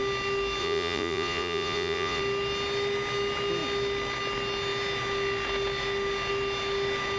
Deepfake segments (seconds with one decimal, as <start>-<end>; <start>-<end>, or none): 0.6-2.2